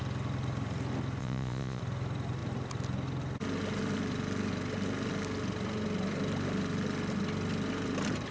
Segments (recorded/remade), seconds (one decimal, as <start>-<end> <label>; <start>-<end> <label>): 0.0-1.2 recorded; 1.2-1.8 remade; 1.8-8.3 recorded